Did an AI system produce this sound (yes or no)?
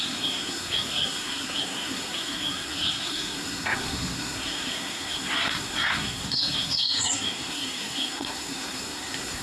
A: yes